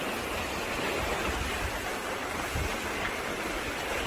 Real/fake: real